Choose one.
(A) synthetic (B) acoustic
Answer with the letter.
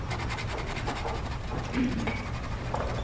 A